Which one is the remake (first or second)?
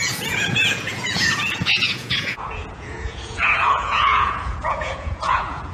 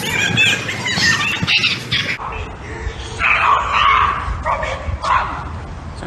first